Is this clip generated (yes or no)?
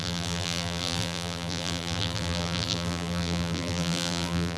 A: yes